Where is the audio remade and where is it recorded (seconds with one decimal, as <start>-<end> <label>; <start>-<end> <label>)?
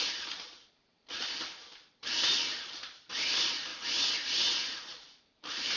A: 0.0-3.7 remade; 3.7-4.8 recorded; 4.8-5.8 remade